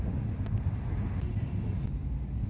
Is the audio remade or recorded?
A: recorded